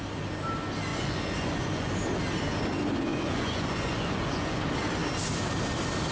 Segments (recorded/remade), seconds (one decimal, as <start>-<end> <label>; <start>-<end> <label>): 0.0-0.9 recorded; 0.9-1.9 remade; 1.9-3.1 recorded; 3.1-4.6 remade; 4.6-6.1 recorded